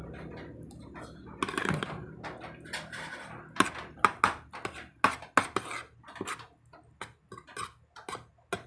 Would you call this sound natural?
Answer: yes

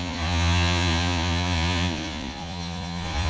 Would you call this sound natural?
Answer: no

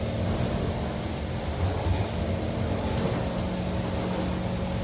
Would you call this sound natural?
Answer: yes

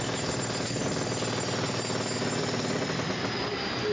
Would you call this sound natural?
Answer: yes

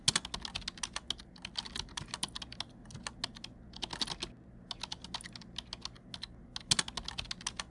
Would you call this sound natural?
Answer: yes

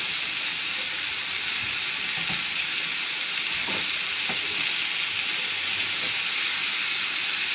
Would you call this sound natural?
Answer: yes